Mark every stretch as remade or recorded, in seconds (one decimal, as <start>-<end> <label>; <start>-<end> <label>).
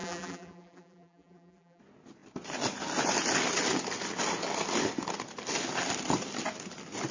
0.0-1.8 remade; 1.8-7.1 recorded